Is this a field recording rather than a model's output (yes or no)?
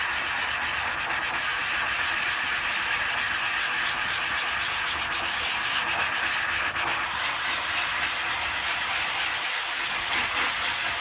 yes